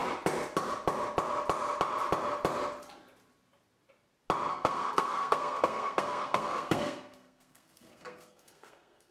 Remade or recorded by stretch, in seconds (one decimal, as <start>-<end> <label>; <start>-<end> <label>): 0.0-4.5 recorded; 4.5-9.1 remade

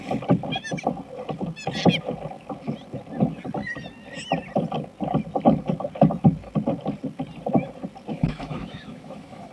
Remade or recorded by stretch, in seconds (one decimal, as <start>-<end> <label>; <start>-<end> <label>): 0.0-8.1 recorded; 8.1-9.5 remade